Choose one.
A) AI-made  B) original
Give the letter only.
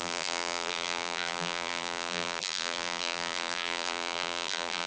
A